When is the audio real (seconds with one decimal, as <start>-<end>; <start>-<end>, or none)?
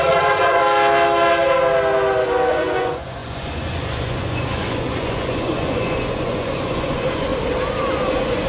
0.6-2.5; 7.3-8.1